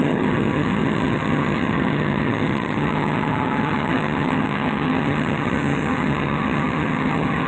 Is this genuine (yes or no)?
no